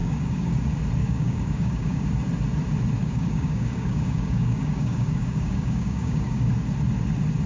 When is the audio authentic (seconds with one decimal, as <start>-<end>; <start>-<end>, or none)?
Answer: 0.5-1.0; 2.0-3.0; 6.5-7.5